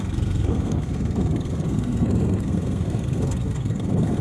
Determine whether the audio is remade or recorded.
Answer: remade